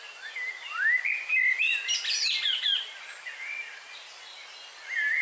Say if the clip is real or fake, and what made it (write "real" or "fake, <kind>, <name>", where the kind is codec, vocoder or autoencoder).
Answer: real